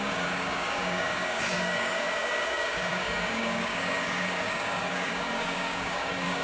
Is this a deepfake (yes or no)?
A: yes